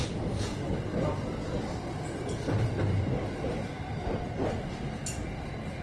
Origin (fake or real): fake